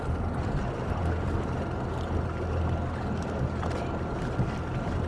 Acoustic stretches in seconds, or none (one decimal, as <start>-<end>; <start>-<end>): 0.0-5.1